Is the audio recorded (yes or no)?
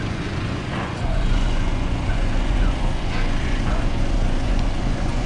no